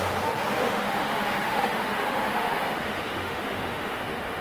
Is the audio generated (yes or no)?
yes